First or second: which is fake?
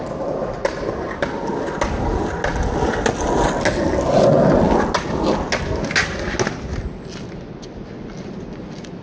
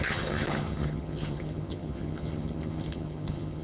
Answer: second